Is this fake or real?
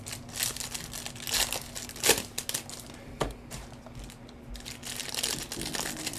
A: real